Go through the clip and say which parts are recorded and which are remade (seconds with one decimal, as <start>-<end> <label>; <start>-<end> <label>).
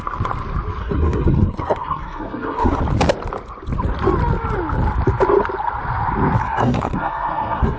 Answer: 0.0-0.8 recorded; 0.8-2.8 remade; 2.8-6.4 recorded; 6.4-7.8 remade